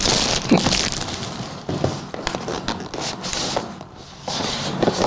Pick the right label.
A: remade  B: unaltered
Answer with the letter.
B